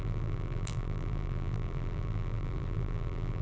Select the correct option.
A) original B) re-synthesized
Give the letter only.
B